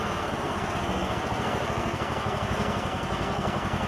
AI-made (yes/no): yes